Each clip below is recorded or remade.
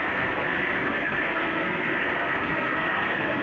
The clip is remade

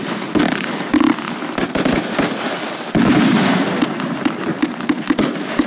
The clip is recorded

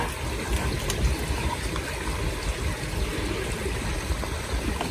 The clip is recorded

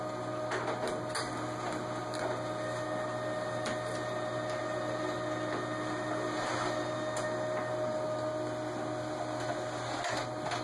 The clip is recorded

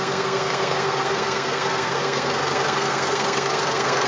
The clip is remade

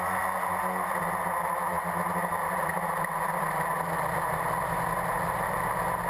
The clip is recorded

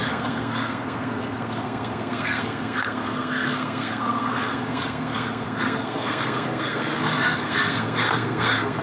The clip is remade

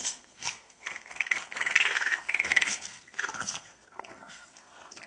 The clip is remade